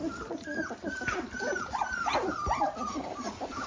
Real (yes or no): yes